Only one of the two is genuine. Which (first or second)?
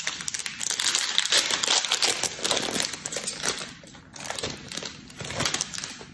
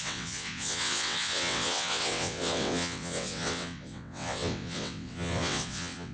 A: first